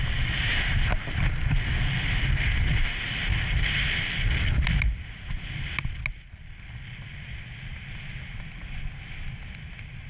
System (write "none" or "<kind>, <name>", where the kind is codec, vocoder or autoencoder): none